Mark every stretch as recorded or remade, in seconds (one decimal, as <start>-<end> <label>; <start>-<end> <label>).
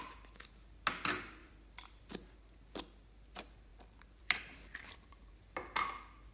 0.0-1.4 recorded; 1.4-2.0 remade; 2.0-3.7 recorded; 3.7-5.3 remade; 5.3-6.3 recorded